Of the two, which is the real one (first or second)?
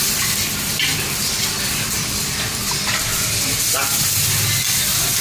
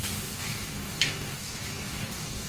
first